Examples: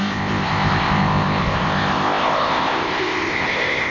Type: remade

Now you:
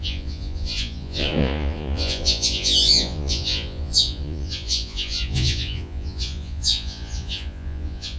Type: remade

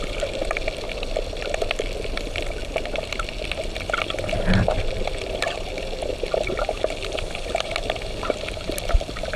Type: remade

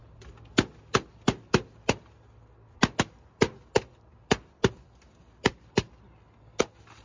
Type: recorded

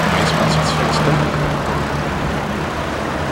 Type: recorded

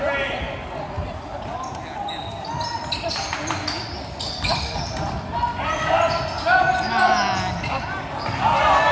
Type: recorded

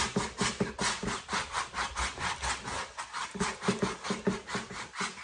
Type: recorded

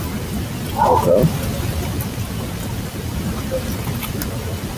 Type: recorded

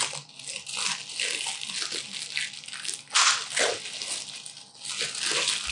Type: recorded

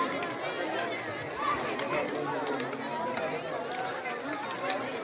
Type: recorded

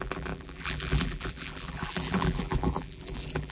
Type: remade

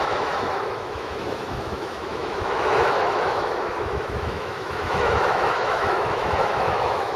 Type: remade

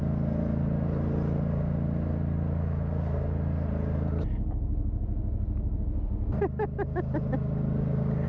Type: recorded